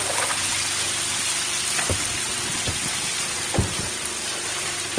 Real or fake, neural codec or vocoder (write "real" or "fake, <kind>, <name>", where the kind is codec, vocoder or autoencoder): real